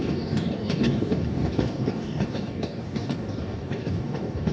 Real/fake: fake